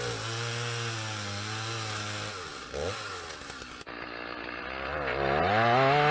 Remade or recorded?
recorded